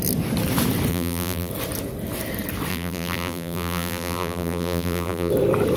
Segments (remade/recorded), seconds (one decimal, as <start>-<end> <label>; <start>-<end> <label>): 0.0-0.9 recorded; 0.9-1.5 remade; 1.5-2.7 recorded; 2.7-5.3 remade; 5.3-5.8 recorded